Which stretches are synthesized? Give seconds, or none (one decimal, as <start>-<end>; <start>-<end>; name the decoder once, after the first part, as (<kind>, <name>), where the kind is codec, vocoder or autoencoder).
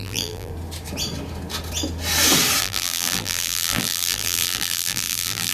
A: 0.0-0.5 (vocoder, BigVGAN v2); 2.6-5.5